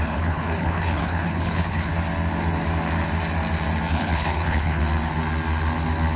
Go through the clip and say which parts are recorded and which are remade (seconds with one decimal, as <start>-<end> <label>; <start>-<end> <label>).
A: 0.0-1.9 remade; 1.9-3.9 recorded; 3.9-4.8 remade; 4.8-6.2 recorded